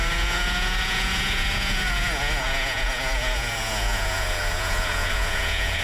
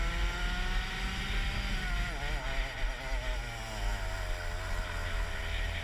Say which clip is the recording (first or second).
second